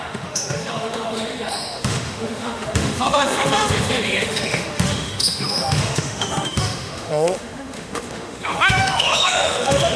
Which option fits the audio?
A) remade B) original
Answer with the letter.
A